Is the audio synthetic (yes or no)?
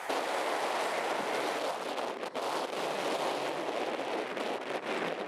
no